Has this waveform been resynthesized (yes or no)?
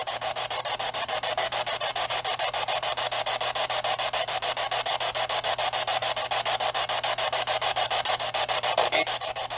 no